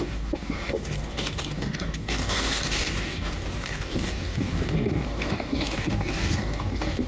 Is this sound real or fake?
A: fake